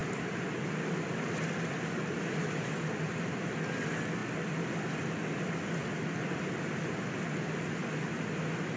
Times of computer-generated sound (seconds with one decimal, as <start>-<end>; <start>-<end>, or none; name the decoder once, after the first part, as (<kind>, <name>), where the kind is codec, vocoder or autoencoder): 0.0-0.9 (vocoder, BigVGAN v2); 4.2-5.0